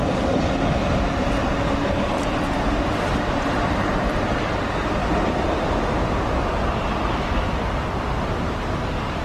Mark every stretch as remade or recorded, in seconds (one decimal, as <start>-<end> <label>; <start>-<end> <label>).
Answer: 0.0-0.7 recorded; 0.7-5.0 remade; 5.0-7.1 recorded; 7.1-9.2 remade